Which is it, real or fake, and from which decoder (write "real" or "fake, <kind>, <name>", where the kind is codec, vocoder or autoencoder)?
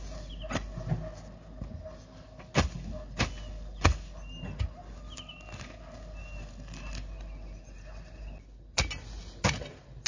real